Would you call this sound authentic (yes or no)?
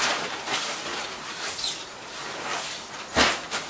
yes